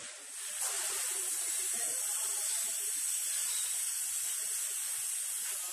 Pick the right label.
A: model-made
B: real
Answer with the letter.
B